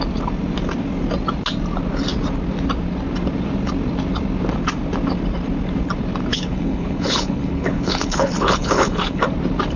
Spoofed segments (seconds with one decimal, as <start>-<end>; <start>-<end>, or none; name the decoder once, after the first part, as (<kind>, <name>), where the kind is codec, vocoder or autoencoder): 6.3-9.2 (codec, HILCodec)